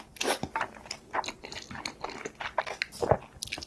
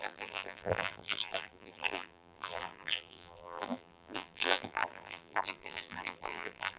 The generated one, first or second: second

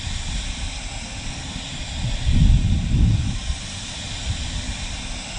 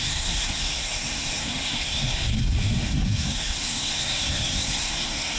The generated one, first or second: second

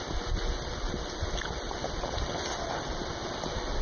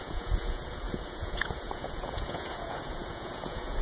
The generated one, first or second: second